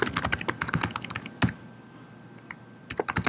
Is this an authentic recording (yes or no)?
yes